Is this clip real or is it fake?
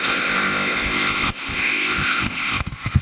fake